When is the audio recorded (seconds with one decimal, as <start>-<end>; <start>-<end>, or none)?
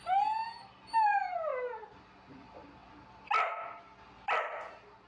0.0-5.1